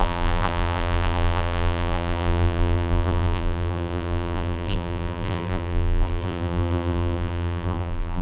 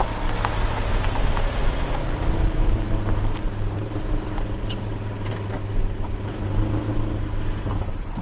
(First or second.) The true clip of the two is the second